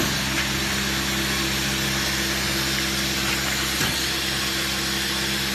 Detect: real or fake real